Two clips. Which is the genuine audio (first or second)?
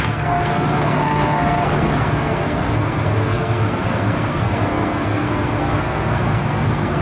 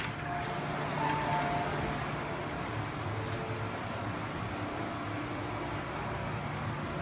second